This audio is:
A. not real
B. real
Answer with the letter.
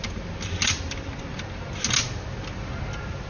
B